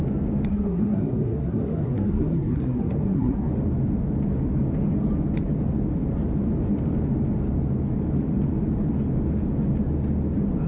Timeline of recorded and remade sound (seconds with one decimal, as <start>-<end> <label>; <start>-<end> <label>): 0.0-0.5 recorded; 0.5-3.5 remade; 3.5-10.7 recorded